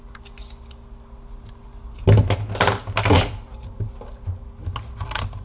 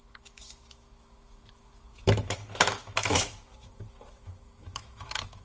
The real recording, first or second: first